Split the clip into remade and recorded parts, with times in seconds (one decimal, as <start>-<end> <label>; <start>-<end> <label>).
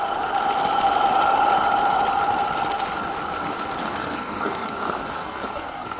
0.0-3.8 recorded; 3.8-6.0 remade